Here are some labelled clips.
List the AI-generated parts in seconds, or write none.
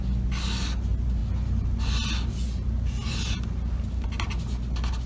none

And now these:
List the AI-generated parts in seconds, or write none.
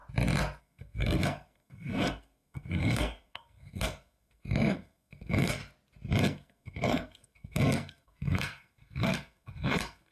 0.6-5.6 (codec, SNAC); 6.2-10.1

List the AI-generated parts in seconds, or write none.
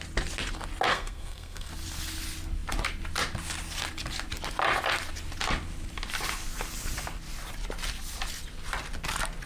0.9-1.7 (codec, SNAC)